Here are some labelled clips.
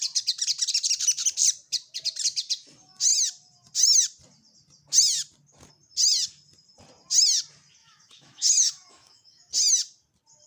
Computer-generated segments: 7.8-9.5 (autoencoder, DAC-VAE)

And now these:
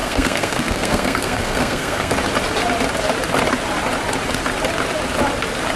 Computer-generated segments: 0.0-2.1 (codec, SNAC)